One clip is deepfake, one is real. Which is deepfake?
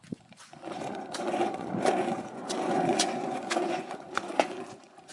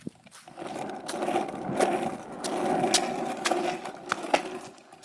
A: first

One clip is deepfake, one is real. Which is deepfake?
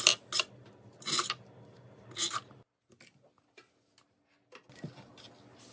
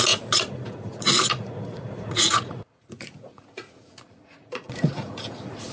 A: second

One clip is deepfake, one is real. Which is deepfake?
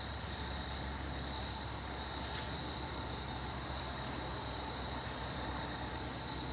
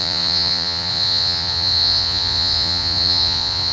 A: second